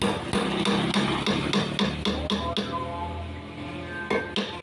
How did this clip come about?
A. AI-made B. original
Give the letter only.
B